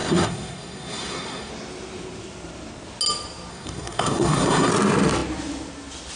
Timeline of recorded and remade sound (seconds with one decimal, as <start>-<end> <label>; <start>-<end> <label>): 0.0-1.5 remade; 1.5-3.5 recorded; 3.5-4.7 remade; 4.7-6.2 recorded